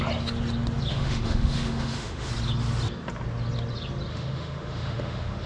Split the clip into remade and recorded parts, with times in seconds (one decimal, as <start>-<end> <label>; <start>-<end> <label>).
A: 0.0-0.9 recorded; 0.9-2.3 remade; 2.3-4.1 recorded; 4.1-5.5 remade